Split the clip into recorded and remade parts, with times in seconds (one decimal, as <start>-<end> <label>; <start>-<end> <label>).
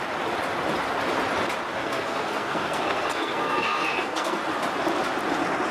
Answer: 0.0-1.8 recorded; 1.8-4.4 remade; 4.4-5.7 recorded